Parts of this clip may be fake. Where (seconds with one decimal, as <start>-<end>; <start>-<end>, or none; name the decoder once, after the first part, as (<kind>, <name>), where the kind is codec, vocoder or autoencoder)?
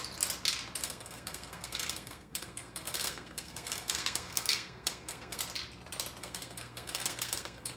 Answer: 0.8-5.4 (codec, SNAC); 6.2-7.8